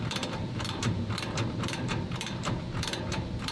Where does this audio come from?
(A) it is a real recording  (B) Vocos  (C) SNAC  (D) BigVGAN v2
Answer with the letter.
D